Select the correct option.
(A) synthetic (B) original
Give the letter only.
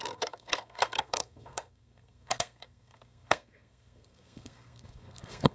A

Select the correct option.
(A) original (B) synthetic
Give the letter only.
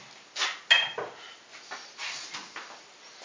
A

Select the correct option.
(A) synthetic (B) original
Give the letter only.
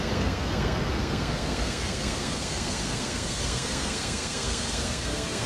A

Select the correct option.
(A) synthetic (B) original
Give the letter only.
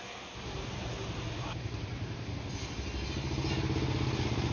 B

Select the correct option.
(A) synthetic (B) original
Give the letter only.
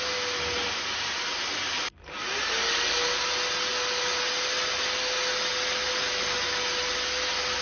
B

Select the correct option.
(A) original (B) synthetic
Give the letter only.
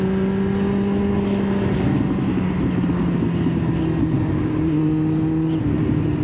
A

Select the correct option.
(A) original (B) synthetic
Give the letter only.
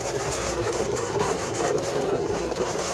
B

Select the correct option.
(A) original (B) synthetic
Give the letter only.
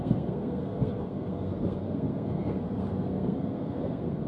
B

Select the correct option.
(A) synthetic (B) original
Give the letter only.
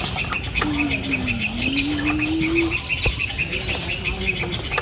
B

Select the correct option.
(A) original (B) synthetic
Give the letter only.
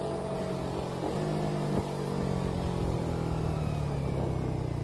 A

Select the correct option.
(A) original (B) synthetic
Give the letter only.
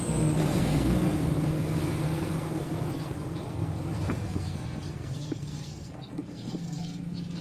B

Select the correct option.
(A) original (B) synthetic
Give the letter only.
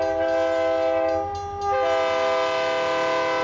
A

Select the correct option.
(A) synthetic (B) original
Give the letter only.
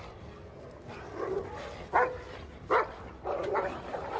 B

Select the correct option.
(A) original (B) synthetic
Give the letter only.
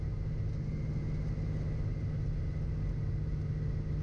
A